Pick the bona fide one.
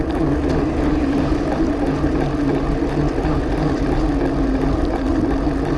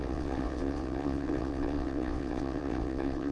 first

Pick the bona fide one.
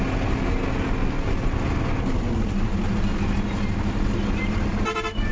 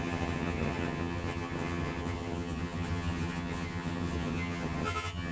first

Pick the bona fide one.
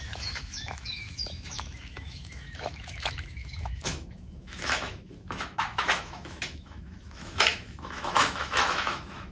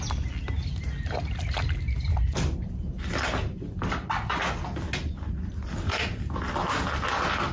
second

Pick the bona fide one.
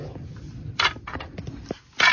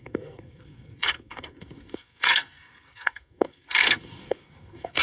first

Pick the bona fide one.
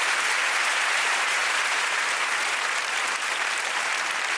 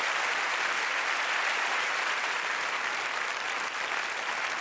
second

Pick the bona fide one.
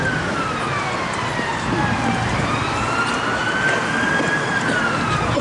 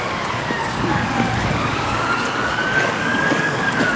first